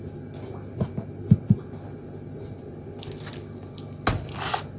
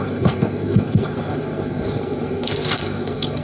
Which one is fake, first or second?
second